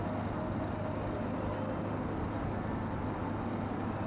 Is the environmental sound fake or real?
real